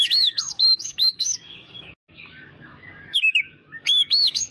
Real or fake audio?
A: fake